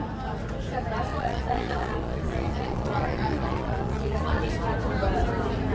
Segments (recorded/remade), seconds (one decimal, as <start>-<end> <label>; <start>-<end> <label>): 0.0-1.1 recorded; 1.1-4.5 remade; 4.5-5.7 recorded